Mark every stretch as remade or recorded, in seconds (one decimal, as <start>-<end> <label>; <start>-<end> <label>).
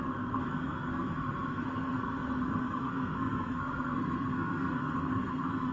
0.0-5.7 remade